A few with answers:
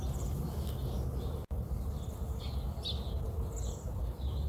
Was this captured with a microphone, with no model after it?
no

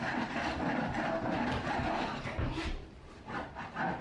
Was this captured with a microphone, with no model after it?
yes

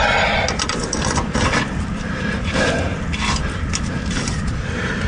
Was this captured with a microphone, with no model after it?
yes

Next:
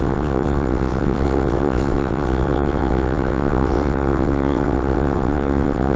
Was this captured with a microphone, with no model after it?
no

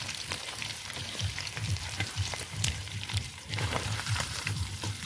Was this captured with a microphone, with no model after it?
no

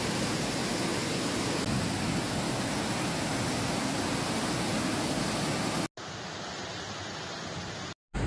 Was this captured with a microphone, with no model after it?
yes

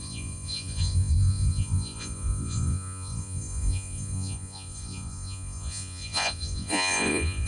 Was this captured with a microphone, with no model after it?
no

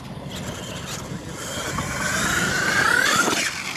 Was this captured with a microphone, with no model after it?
yes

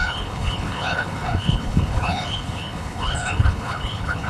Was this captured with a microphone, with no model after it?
no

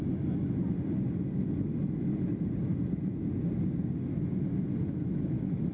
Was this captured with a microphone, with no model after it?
yes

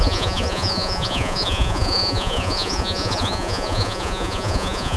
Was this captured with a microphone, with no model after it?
no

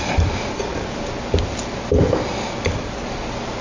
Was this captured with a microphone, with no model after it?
yes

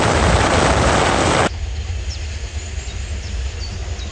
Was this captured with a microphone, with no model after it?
yes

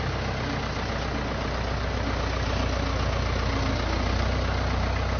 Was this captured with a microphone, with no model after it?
yes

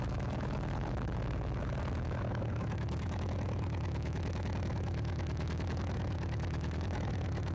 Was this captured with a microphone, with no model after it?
no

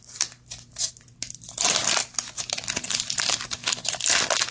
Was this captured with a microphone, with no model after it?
yes